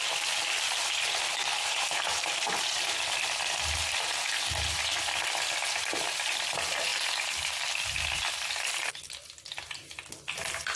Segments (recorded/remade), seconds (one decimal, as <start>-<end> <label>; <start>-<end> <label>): 0.0-1.5 recorded; 1.5-2.7 remade; 2.7-10.8 recorded